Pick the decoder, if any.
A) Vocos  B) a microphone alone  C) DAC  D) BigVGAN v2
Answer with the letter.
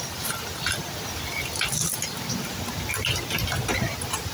B